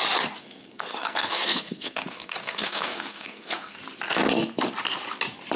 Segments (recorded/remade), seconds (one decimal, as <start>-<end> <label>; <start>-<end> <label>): 0.0-0.4 recorded; 0.4-3.8 remade; 3.8-5.6 recorded